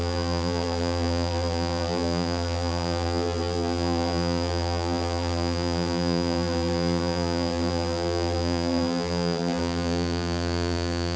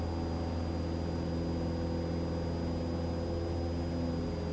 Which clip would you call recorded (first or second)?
second